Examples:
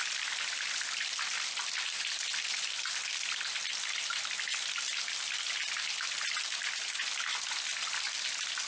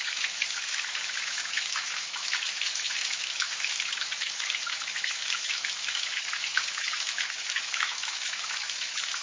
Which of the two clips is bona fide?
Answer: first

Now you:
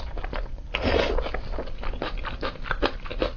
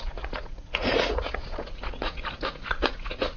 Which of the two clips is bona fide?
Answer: first